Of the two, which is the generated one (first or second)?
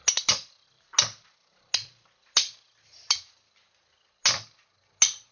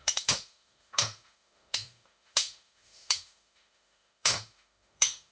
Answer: second